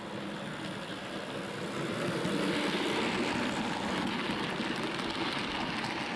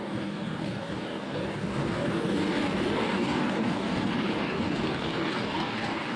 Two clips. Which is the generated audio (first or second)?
second